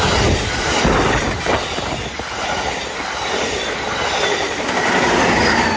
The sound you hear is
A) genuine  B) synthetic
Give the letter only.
A